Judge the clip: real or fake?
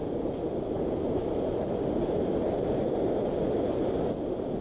real